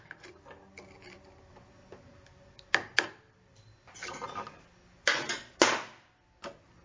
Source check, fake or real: real